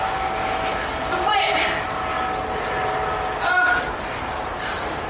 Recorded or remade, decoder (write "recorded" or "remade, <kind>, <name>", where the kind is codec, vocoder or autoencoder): recorded